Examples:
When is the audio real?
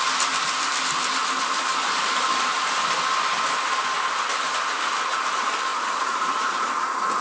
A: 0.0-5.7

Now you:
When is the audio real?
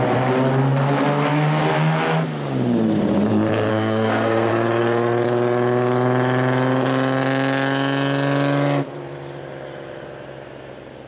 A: 0.0-3.7; 4.5-11.1